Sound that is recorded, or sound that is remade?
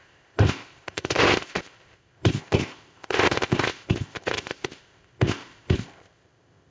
remade